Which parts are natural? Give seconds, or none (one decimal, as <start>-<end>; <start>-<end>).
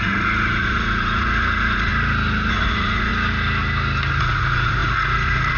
1.9-2.5; 3.1-4.2